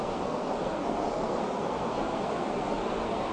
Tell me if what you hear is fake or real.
fake